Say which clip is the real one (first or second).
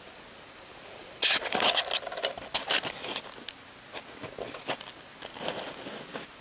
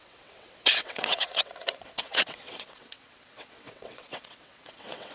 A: first